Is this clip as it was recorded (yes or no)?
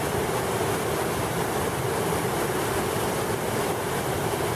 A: yes